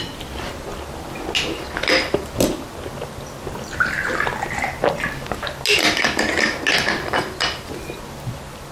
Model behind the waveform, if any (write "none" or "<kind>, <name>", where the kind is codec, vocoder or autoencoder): none